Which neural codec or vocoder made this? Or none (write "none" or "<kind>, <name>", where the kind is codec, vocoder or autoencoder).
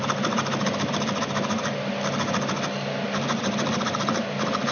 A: none